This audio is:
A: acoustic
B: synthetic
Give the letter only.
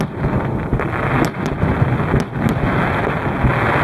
A